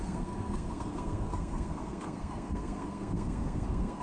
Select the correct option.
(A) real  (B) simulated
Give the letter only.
B